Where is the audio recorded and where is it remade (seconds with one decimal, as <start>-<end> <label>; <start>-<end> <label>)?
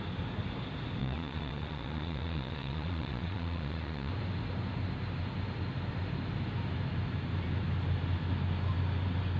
0.0-1.0 recorded; 1.0-4.1 remade; 4.1-9.4 recorded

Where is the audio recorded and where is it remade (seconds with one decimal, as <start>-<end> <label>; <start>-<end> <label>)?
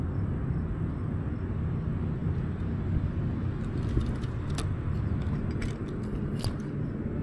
0.0-7.2 recorded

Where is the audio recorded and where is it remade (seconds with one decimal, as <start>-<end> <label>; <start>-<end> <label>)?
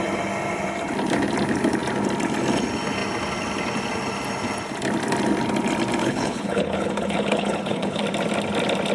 0.0-6.0 recorded; 6.0-8.0 remade; 8.0-8.9 recorded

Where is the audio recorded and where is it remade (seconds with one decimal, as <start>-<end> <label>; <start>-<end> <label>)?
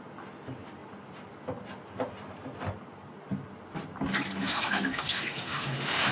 0.0-4.4 recorded; 4.4-6.1 remade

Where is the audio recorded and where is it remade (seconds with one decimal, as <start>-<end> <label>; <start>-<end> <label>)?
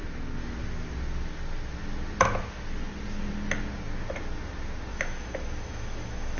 0.0-4.9 recorded; 4.9-6.4 remade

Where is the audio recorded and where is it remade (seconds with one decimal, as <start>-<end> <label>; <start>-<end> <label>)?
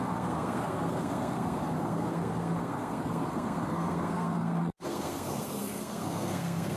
0.0-6.8 remade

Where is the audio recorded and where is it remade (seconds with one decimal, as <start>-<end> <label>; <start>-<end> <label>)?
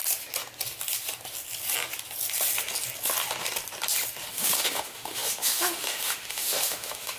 0.0-4.3 recorded; 4.3-7.2 remade